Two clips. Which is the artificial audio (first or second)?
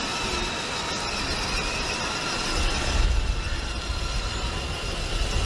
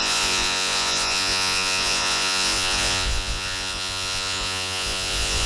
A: second